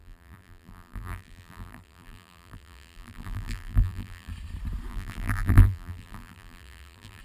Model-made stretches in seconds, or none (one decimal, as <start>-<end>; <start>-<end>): 0.0-4.3; 4.9-7.2